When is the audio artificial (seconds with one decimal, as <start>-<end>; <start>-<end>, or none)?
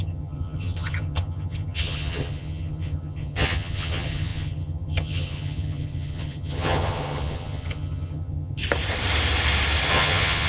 0.0-8.6; 9.9-10.5